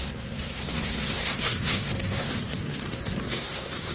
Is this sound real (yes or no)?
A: no